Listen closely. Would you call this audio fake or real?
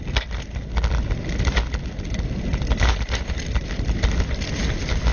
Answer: real